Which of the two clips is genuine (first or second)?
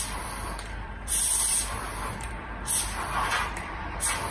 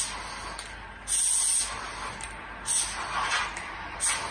second